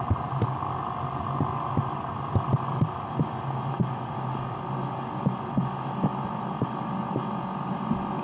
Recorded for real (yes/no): yes